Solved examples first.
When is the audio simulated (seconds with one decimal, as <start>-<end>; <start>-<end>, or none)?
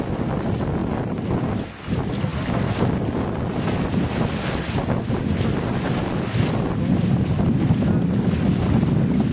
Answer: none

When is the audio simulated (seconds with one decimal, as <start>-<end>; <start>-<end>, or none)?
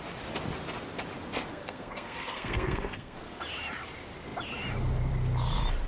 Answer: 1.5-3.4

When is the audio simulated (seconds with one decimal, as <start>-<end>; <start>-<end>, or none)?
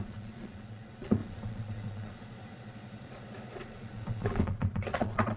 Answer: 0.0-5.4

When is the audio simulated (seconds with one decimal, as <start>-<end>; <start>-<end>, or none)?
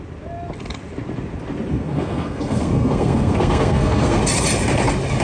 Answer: 1.7-4.2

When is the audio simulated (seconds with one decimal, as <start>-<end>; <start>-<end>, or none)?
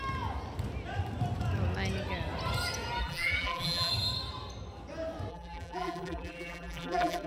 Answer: 3.0-3.9; 5.3-7.3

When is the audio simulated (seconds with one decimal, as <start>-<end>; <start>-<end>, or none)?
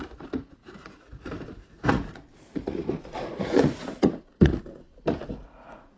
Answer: 0.0-6.0